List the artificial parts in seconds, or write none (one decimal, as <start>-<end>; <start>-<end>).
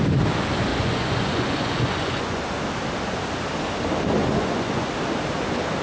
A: 0.7-2.4; 4.2-4.9